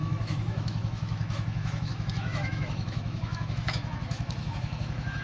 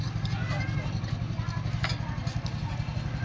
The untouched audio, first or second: second